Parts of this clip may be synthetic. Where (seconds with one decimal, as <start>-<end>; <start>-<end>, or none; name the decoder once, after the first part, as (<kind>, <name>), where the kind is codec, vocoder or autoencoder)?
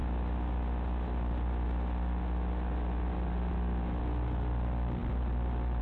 none